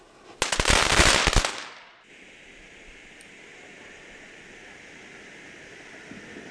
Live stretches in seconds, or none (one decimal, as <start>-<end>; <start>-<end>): 0.0-6.5